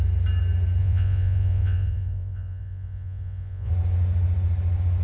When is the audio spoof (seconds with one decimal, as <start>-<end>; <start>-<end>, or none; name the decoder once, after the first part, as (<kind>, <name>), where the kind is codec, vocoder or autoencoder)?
0.8-3.7 (vocoder, Vocos)